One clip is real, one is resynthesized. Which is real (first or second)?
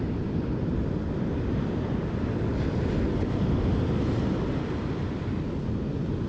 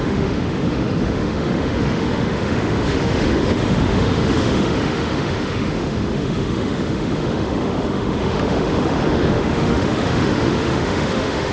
first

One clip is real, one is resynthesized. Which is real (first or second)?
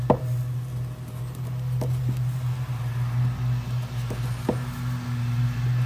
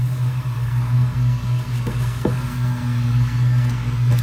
first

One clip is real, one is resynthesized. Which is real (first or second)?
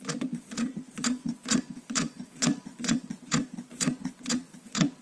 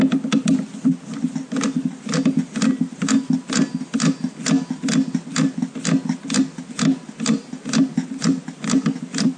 second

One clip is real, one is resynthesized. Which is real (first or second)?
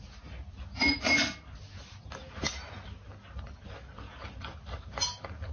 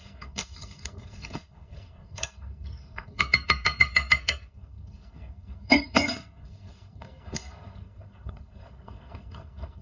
first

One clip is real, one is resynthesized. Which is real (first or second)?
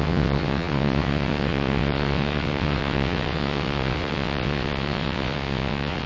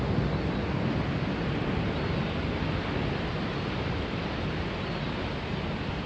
second